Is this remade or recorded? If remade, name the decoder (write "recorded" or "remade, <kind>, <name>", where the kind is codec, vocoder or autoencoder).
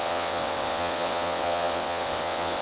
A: remade, vocoder, WaveNeXt